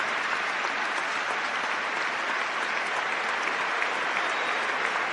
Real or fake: real